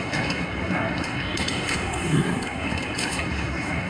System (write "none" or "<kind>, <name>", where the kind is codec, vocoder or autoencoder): codec, SNAC